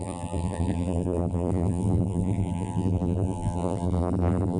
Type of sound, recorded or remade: remade